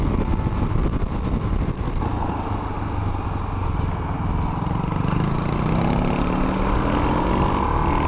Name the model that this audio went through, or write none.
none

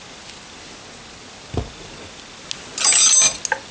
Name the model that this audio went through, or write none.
none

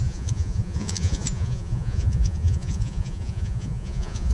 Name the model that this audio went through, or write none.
vocoder, Vocos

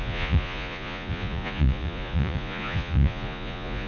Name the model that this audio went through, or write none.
vocoder, Vocos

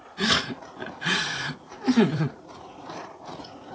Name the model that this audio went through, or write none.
vocoder, Vocos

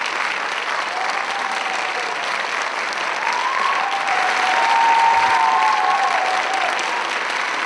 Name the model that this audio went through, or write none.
none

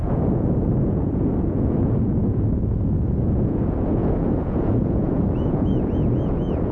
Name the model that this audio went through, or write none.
vocoder, Vocos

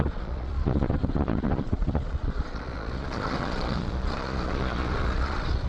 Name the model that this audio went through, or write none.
vocoder, Vocos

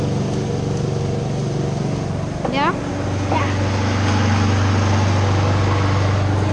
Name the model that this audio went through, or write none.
none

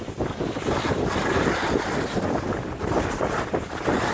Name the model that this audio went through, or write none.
none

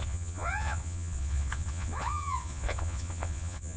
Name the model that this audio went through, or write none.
vocoder, Vocos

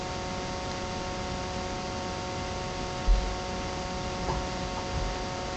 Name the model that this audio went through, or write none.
none